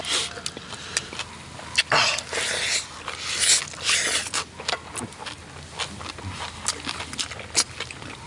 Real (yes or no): yes